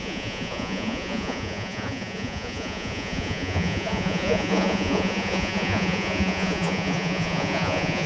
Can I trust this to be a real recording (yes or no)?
no